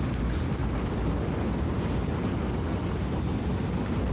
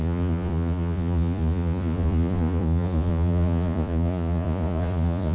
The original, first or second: first